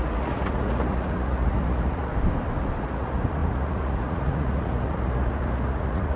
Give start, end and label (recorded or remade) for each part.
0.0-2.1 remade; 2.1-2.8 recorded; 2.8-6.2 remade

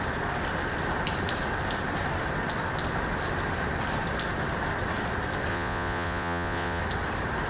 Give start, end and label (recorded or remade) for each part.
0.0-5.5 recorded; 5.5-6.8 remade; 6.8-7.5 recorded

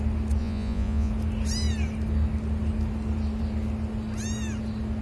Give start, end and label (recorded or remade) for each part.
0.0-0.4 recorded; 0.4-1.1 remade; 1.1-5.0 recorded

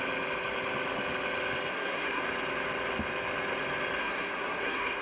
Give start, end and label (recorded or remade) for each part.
0.0-1.7 recorded; 1.7-2.2 remade; 2.2-4.0 recorded; 4.0-5.0 remade

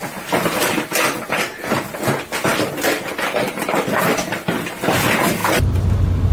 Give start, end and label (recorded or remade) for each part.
0.0-6.3 recorded

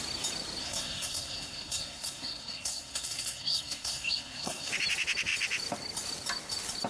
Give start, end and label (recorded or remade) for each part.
0.0-0.6 recorded; 0.6-4.7 remade; 4.7-6.9 recorded

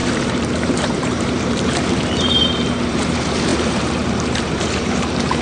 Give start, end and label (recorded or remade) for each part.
0.0-5.4 remade

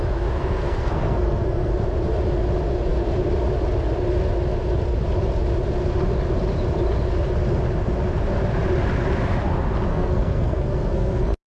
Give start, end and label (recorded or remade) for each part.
0.0-0.4 recorded; 0.4-1.7 remade; 1.7-9.9 recorded; 9.9-11.5 remade